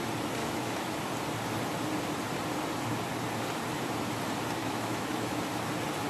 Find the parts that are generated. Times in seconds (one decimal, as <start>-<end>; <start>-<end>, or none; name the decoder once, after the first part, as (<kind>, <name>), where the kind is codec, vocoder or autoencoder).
0.4-1.1 (autoencoder, DAC-VAE); 4.6-5.4